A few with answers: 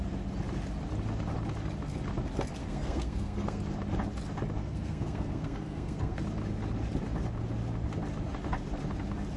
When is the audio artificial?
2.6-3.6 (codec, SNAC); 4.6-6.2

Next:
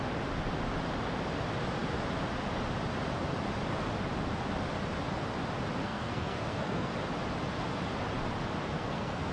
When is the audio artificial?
5.8-6.9 (codec, SNAC); 8.7-9.3

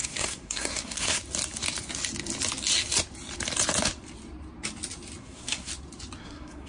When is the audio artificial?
0.0-1.2 (codec, SNAC); 5.2-5.7; 6.2-6.7

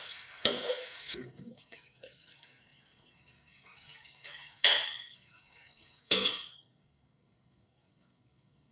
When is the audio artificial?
0.0-8.7 (codec, SNAC)

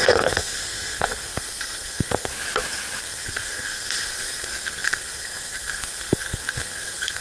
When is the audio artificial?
0.0-2.3 (codec, SNAC); 3.0-7.2